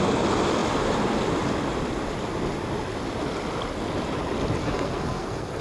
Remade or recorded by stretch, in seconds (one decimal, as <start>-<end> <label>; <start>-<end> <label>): 0.0-4.6 recorded; 4.6-5.6 remade